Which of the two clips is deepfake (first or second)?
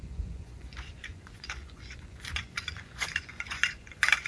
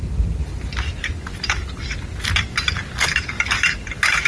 first